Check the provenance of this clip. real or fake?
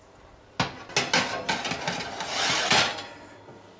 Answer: real